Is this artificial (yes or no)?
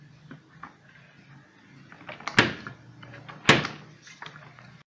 no